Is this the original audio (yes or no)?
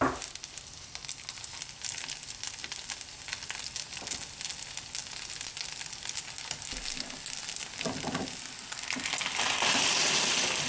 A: yes